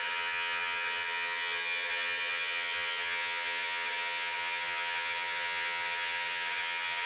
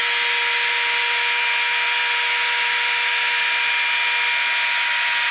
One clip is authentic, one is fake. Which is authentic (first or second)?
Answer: second